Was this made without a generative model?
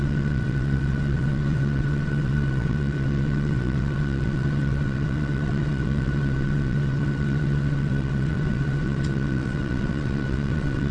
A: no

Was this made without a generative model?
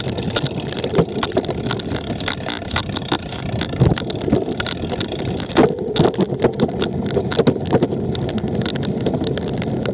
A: yes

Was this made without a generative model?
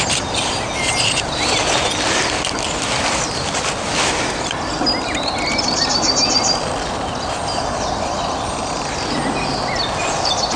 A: yes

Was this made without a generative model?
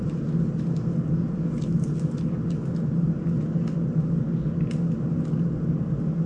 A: yes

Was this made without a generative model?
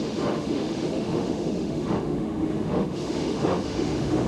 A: no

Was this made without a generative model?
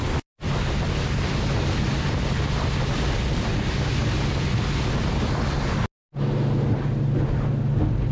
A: yes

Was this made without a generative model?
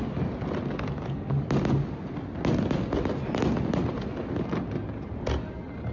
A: yes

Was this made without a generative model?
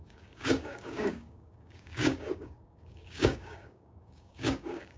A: no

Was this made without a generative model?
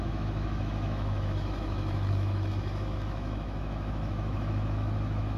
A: no